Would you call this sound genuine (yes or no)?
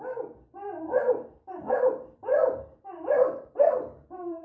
no